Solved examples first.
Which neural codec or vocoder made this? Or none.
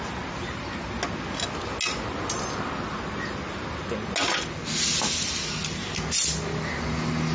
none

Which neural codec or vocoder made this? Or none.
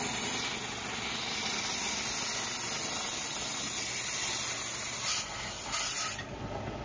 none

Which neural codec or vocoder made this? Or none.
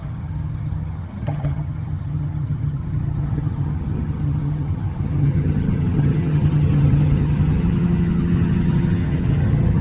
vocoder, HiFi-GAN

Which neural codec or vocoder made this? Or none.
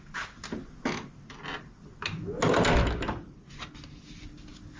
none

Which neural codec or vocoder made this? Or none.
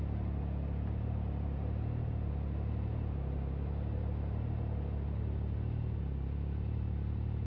none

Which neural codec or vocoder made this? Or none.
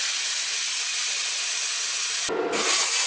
none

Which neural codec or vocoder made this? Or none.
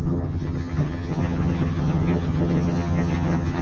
vocoder, HiFi-GAN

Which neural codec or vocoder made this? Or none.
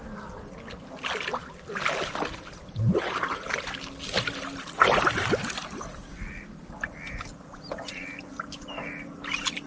none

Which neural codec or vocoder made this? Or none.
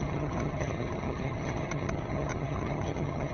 vocoder, HiFi-GAN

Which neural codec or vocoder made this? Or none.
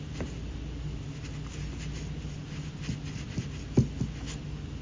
none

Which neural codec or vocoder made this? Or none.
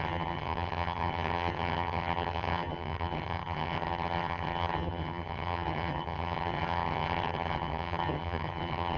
vocoder, HiFi-GAN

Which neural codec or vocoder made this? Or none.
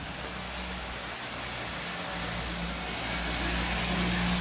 none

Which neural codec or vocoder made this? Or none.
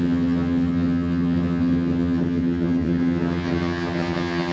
vocoder, HiFi-GAN